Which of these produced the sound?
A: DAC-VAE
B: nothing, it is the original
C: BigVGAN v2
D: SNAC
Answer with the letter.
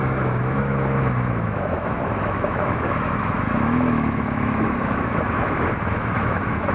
A